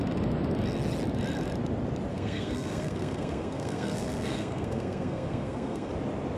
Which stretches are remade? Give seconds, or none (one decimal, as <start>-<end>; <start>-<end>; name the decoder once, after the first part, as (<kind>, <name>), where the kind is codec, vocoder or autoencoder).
2.1-5.9 (codec, SNAC)